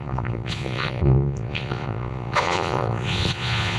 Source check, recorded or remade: remade